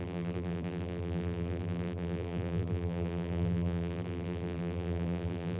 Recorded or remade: remade